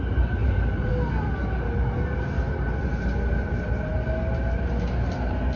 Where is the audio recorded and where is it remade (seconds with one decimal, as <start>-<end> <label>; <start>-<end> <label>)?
0.0-0.4 recorded; 0.4-0.9 remade; 0.9-5.6 recorded

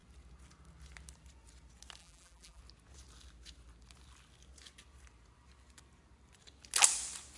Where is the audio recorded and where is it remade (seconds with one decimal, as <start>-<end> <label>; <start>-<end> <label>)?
0.0-2.0 recorded; 2.0-2.6 remade; 2.6-7.4 recorded

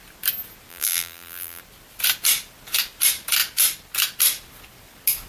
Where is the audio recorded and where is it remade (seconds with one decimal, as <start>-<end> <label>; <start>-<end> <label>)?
0.0-0.7 recorded; 0.7-1.6 remade; 1.6-5.3 recorded